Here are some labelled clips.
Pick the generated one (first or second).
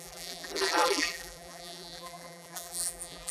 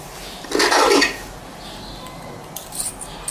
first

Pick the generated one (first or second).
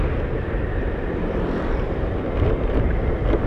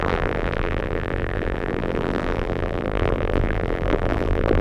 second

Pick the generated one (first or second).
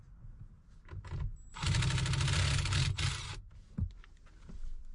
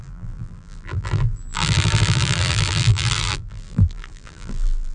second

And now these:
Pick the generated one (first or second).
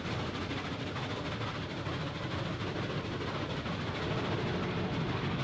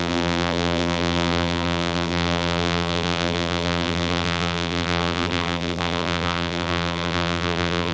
second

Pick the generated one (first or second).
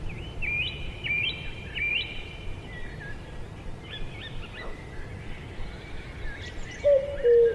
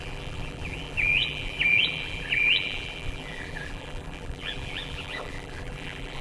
second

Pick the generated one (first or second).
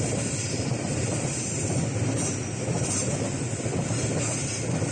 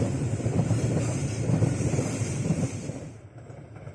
second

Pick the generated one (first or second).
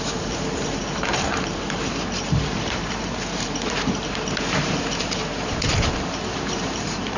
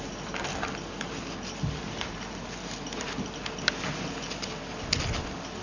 first